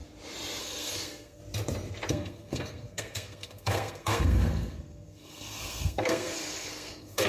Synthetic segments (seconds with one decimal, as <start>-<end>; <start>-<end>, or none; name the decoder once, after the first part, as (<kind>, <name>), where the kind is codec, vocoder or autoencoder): 0.6-1.4 (codec, SNAC); 2.1-7.3